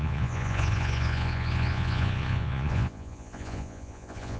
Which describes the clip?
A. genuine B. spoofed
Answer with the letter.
B